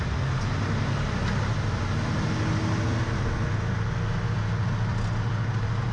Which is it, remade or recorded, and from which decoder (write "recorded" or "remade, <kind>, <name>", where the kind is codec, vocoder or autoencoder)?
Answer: recorded